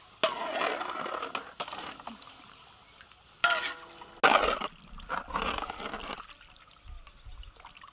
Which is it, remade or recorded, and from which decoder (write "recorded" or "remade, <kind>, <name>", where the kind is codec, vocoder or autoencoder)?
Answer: recorded